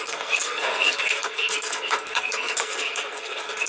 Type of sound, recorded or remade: remade